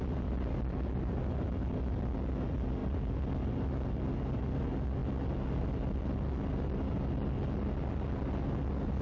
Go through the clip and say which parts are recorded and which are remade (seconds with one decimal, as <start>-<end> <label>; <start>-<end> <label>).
0.0-9.0 recorded

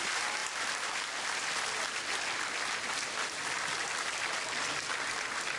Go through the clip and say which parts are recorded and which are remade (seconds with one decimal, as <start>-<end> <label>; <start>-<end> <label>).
0.0-5.6 recorded

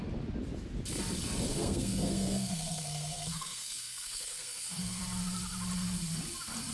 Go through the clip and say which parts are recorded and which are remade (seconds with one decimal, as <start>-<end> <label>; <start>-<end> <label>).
0.0-1.5 recorded; 1.5-5.0 remade; 5.0-6.7 recorded

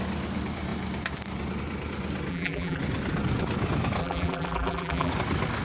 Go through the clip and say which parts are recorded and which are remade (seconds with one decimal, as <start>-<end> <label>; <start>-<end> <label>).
0.0-2.3 recorded; 2.3-2.8 remade; 2.8-4.0 recorded; 4.0-5.1 remade; 5.1-5.6 recorded

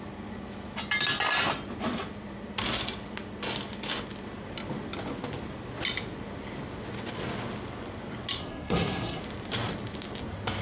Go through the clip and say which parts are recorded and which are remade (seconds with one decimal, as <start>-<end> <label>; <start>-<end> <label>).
0.0-8.4 recorded; 8.4-9.2 remade; 9.2-10.6 recorded

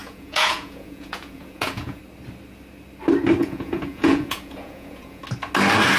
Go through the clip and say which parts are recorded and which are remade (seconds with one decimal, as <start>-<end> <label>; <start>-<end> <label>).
0.0-2.0 remade; 2.0-3.4 recorded; 3.4-5.2 remade; 5.2-6.0 recorded